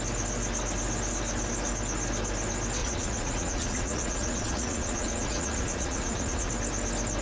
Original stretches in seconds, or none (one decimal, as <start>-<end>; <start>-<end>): 0.0-2.8; 6.5-7.2